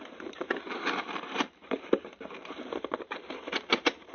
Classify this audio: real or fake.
fake